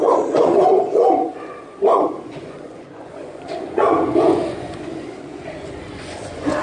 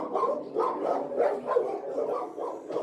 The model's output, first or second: first